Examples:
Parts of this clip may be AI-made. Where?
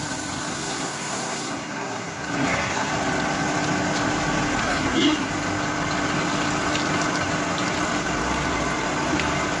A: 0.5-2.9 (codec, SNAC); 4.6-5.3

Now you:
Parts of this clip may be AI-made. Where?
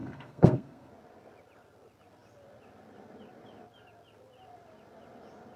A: 0.0-0.9 (codec, SNAC)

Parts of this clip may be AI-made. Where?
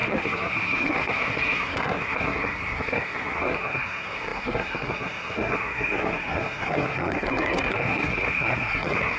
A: 0.0-9.2 (codec, SNAC)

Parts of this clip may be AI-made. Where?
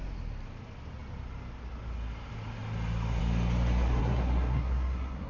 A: 4.0-5.3 (codec, SNAC)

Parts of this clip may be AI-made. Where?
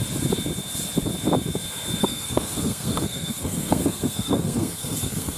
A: 2.0-5.4 (codec, SNAC)